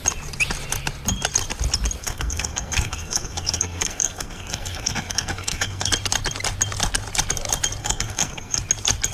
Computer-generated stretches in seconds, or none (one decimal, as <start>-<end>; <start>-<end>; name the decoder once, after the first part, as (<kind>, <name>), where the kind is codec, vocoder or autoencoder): 2.0-5.9 (codec, SNAC); 7.8-8.6